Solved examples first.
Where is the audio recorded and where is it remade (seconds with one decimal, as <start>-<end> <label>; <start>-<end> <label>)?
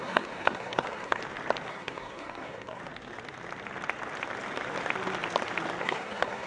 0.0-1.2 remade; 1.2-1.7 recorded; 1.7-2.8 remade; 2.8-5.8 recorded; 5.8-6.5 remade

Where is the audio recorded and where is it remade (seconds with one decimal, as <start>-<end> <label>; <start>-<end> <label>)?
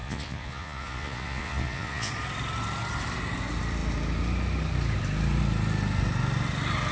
0.0-2.1 remade; 2.1-6.9 recorded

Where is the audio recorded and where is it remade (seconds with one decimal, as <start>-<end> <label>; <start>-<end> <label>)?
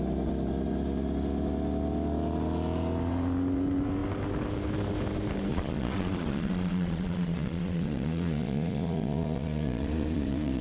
0.0-5.5 recorded; 5.5-10.6 remade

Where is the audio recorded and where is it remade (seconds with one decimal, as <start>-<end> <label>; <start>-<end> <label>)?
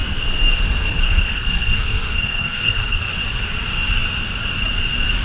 0.0-3.1 remade; 3.1-5.2 recorded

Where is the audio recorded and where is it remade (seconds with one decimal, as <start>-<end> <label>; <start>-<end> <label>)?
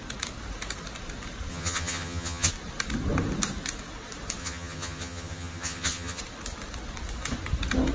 0.0-1.5 recorded; 1.5-2.5 remade; 2.5-4.4 recorded; 4.4-6.2 remade; 6.2-7.9 recorded